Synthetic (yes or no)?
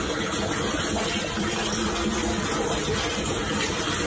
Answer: no